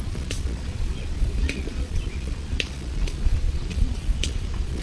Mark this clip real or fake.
fake